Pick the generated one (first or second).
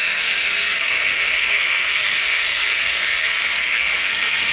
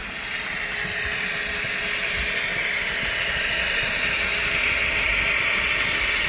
first